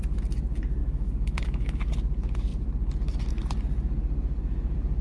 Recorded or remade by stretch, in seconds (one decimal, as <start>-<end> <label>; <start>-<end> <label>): 0.0-0.8 recorded; 0.8-1.9 remade; 1.9-5.0 recorded